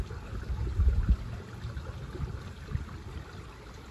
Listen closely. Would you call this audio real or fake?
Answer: real